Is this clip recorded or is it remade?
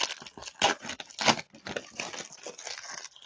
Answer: recorded